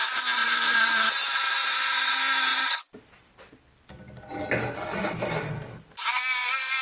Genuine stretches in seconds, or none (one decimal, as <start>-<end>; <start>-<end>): 0.0-0.4; 2.1-2.5; 4.3-6.8